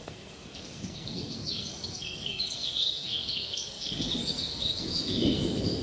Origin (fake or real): fake